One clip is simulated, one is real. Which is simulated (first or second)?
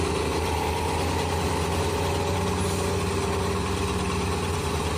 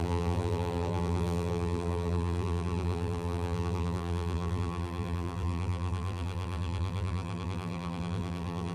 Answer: second